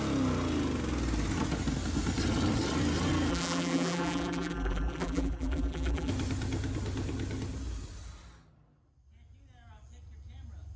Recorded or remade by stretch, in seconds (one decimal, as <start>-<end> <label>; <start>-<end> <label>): 0.0-3.3 recorded; 3.3-6.1 remade; 6.1-10.8 recorded